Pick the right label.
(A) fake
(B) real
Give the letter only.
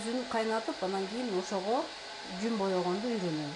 B